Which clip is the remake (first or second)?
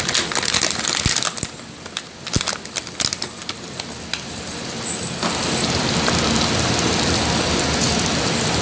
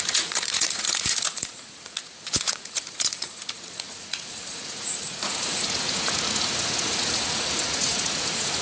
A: second